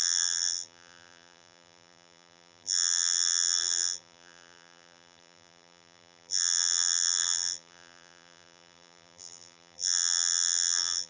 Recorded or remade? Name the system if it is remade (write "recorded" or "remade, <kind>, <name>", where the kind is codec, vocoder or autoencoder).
remade, vocoder, BigVGAN v2